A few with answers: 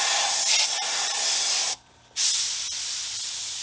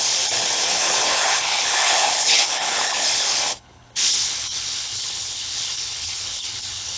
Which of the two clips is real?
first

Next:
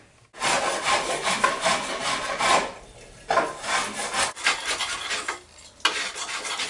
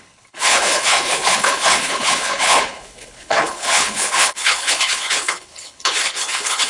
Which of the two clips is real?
first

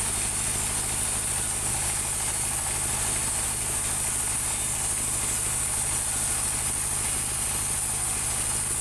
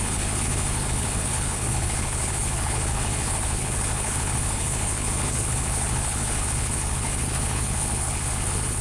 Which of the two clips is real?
first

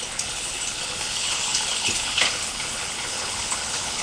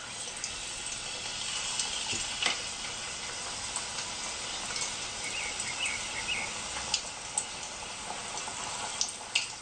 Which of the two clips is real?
second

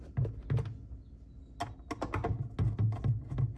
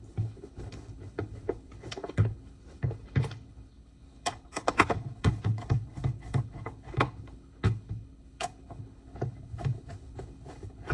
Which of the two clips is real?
first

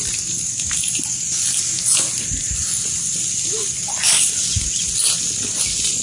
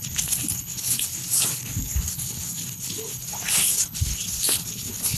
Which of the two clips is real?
first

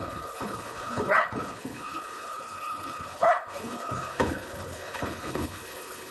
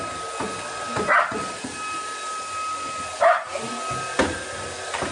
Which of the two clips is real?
second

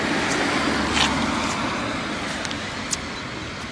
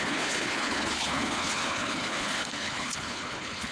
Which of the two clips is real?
first